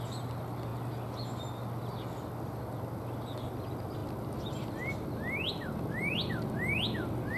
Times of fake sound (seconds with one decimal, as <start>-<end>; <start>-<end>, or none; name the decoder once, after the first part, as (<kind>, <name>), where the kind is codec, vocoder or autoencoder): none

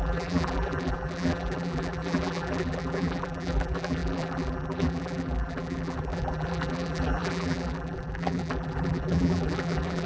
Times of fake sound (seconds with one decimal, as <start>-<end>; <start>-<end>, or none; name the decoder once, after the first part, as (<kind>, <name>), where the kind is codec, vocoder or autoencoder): 0.0-10.1 (vocoder, BigVGAN v2)

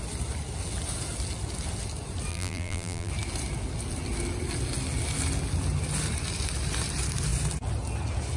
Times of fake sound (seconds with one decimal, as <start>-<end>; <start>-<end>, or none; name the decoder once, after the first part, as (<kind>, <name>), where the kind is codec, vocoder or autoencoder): 2.3-3.1 (vocoder, BigVGAN v2)

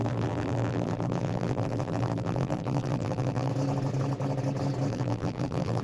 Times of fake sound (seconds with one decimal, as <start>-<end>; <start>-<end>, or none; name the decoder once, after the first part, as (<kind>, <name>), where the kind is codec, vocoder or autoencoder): 0.0-3.5 (vocoder, BigVGAN v2); 4.9-5.8